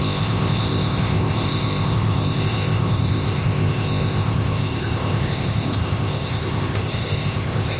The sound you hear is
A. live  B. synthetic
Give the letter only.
B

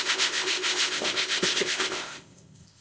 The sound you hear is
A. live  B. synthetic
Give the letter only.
B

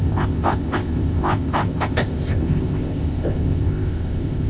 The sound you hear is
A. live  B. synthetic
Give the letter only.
B